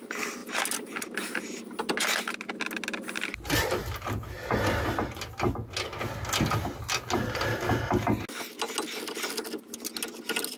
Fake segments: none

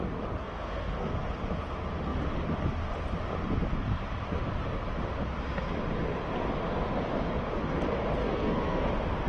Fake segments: 0.4-1.1 (codec, SNAC); 8.2-8.9

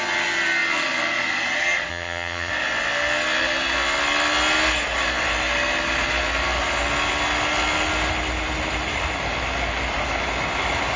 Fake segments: 1.9-2.5 (vocoder, HiFi-GAN)

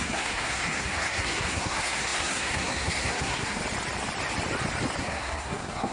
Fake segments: 0.0-3.6 (codec, SNAC); 5.0-5.9

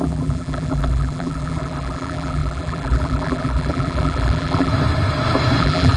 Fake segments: 0.0-4.7 (vocoder, BigVGAN v2); 5.6-6.0

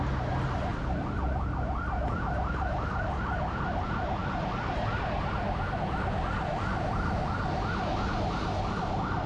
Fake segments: none